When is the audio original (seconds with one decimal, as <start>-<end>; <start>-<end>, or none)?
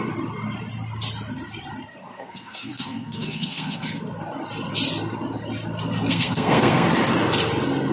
0.0-2.1; 4.0-6.1; 6.9-7.9